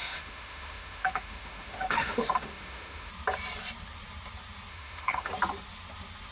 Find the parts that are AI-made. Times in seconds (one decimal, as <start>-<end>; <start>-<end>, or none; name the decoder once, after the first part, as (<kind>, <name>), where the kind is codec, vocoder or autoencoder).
0.0-3.1 (autoencoder, DAC-VAE); 4.7-5.3